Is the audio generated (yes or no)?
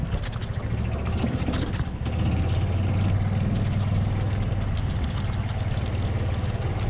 no